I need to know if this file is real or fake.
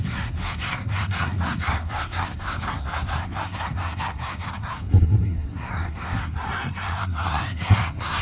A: fake